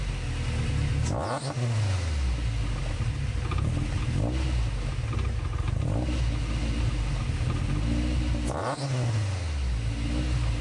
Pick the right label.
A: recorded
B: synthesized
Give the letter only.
A